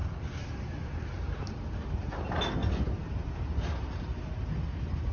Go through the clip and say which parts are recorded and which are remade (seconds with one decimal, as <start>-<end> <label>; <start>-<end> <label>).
0.0-5.1 recorded